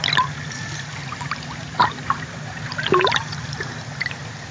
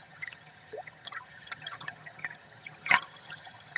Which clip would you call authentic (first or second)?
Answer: first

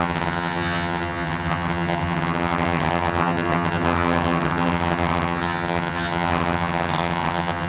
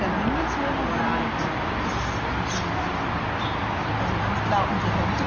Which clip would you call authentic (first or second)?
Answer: second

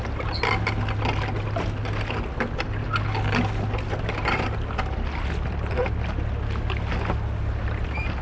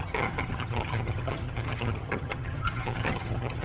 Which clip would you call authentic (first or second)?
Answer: first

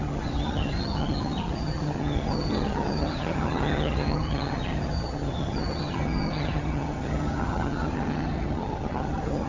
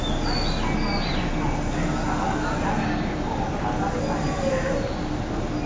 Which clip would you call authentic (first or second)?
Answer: second